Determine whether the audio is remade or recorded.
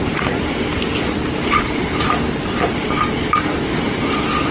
recorded